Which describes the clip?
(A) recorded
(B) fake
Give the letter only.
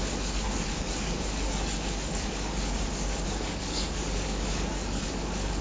B